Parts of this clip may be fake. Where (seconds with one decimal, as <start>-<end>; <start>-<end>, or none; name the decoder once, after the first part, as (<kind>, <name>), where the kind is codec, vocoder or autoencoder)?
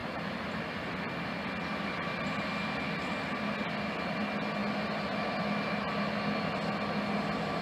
0.0-0.6 (vocoder, BigVGAN v2)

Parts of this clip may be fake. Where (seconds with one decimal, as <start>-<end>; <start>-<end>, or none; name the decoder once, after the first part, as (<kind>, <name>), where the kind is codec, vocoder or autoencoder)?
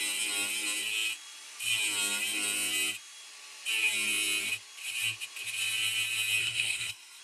6.4-7.2 (codec, SNAC)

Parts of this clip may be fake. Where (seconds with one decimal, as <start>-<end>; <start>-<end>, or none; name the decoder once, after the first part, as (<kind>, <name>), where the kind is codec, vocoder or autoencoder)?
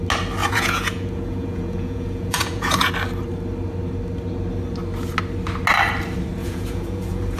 0.4-2.9 (vocoder, Vocos); 6.4-7.4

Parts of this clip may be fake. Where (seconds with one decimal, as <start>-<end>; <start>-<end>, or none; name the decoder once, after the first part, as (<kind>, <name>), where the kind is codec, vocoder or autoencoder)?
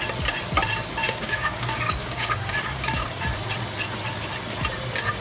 1.0-3.2 (codec, DAC)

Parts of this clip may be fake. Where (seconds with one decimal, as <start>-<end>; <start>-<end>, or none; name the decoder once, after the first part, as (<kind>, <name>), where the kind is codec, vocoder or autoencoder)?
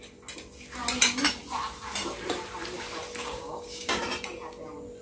3.2-4.0 (codec, DAC)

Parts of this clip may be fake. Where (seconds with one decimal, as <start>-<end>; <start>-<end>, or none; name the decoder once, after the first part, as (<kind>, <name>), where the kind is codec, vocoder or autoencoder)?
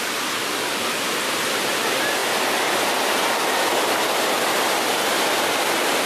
none